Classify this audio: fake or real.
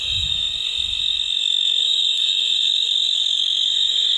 fake